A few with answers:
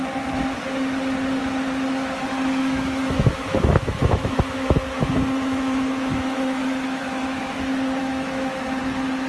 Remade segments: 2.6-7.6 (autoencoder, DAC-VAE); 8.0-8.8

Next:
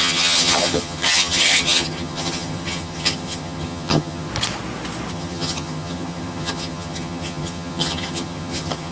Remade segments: 0.0-4.3 (vocoder, HiFi-GAN); 5.1-8.9

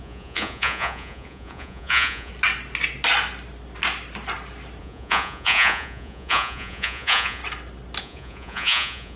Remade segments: 0.0-2.3 (vocoder, Vocos); 4.8-7.4; 8.0-9.2

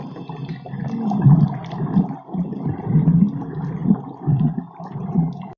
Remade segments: 3.8-4.5 (vocoder, BigVGAN v2)

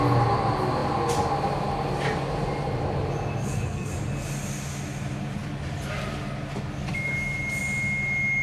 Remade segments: 3.4-3.9 (codec, SNAC)

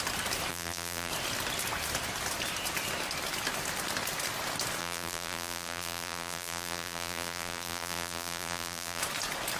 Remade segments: 0.5-1.1 (vocoder, BigVGAN v2); 4.8-9.0

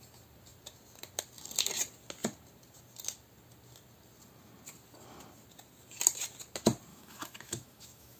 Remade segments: 6.9-8.2 (autoencoder, DAC-VAE)